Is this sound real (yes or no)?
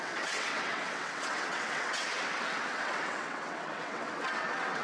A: no